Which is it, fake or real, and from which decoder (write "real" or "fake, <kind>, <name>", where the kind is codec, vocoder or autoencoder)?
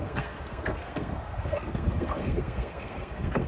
fake, codec, SNAC